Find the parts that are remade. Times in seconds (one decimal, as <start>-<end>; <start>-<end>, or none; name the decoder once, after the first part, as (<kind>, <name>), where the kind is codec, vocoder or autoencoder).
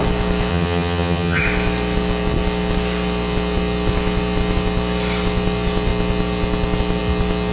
0.5-1.4 (vocoder, HiFi-GAN)